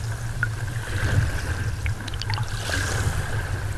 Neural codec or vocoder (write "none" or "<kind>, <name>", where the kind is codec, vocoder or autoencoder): none